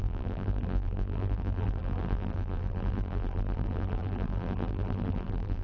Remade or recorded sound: remade